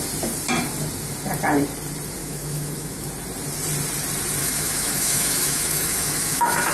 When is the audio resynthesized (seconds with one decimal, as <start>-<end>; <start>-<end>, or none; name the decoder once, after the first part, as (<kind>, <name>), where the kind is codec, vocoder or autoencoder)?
2.2-3.1 (autoencoder, DAC-VAE); 4.4-6.7